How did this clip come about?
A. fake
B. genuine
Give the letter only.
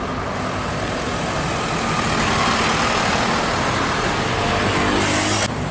B